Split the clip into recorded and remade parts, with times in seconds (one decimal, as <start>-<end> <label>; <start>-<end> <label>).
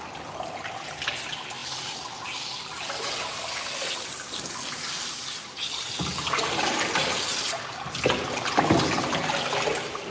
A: 0.0-10.1 recorded